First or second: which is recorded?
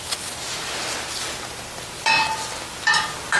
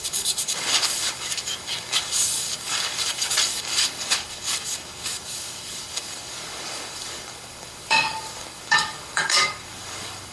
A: first